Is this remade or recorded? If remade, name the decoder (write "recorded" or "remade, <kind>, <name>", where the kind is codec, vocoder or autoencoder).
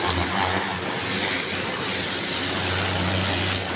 recorded